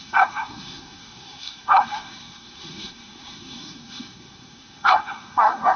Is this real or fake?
fake